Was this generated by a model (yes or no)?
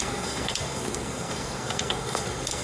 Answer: yes